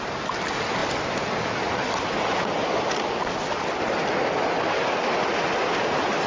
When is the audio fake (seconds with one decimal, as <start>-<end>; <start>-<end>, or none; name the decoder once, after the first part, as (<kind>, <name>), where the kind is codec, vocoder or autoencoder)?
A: none